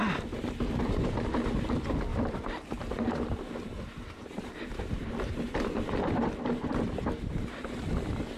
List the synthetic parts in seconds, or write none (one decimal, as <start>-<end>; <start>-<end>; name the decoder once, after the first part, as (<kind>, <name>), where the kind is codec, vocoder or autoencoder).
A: 2.1-7.1 (vocoder, BigVGAN v2)